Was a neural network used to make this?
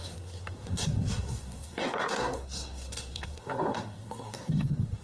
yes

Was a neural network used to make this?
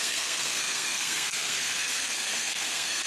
yes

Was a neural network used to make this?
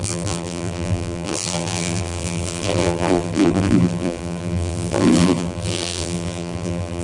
yes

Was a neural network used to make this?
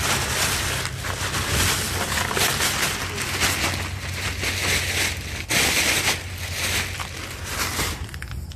no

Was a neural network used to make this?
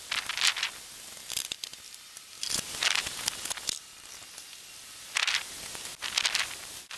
no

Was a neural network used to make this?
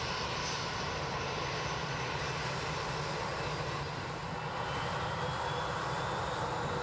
no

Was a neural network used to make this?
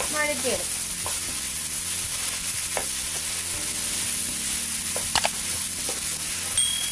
no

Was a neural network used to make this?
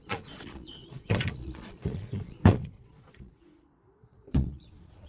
yes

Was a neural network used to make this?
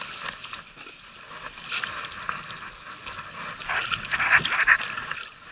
no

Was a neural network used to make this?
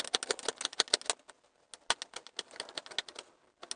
no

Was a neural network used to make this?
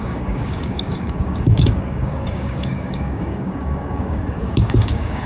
yes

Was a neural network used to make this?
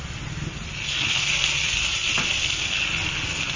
no